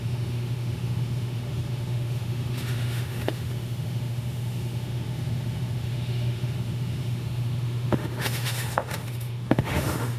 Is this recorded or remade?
remade